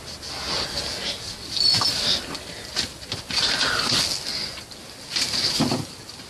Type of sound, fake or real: real